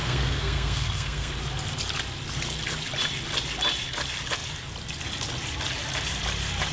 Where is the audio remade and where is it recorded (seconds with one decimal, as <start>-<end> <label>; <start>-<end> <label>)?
0.0-1.3 remade; 1.3-6.7 recorded